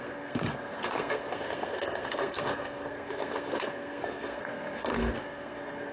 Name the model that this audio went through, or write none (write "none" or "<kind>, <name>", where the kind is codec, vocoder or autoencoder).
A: codec, SNAC